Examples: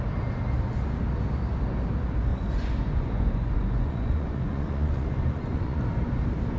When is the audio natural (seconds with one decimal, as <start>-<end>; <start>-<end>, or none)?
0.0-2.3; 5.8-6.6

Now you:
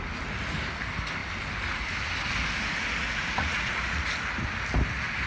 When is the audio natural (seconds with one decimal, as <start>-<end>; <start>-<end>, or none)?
0.0-3.0; 4.1-5.3

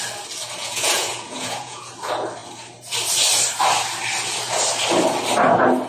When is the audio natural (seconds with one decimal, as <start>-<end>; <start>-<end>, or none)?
0.0-0.6; 1.9-5.9

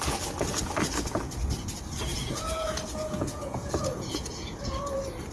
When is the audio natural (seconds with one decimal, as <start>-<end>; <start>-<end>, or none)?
0.0-2.1; 4.8-5.3